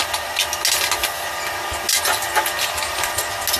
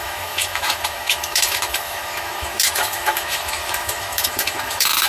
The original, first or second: first